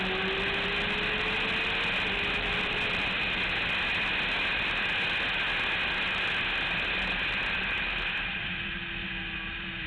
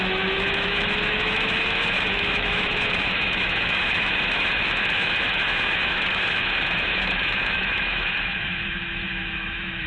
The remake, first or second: second